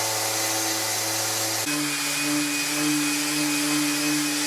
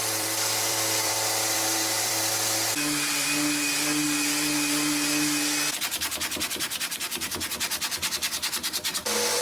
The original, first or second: first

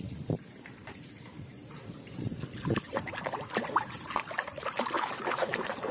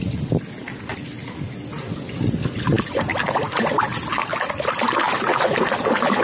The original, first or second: second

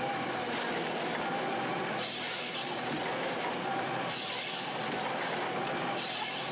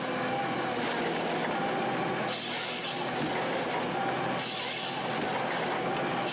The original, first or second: second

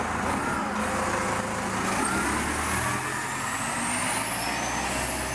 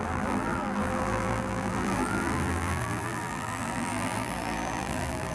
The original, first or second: first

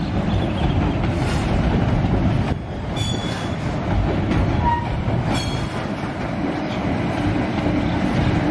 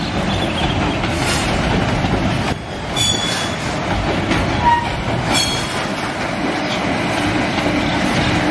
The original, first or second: second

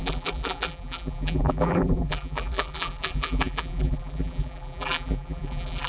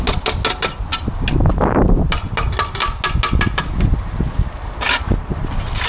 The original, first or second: second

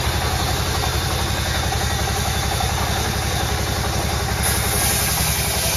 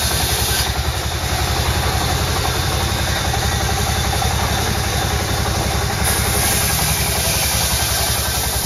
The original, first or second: first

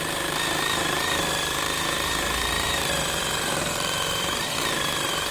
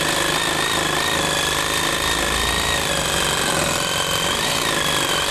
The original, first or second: second